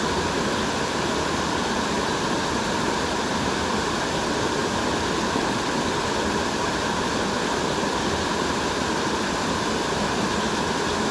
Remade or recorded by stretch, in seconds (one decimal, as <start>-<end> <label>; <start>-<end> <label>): 0.0-11.1 recorded